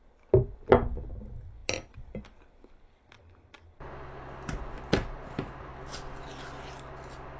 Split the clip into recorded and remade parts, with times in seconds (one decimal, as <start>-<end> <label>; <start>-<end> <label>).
0.0-7.4 recorded